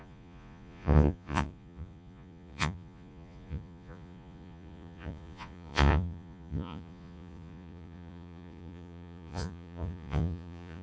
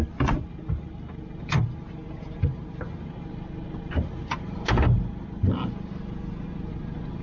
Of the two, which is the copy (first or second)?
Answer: first